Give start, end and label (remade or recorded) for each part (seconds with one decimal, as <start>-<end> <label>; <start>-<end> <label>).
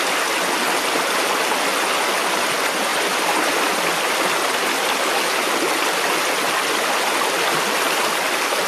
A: 0.0-8.7 recorded